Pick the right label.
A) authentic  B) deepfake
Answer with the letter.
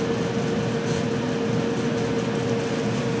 A